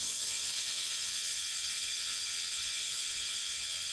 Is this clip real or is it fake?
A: fake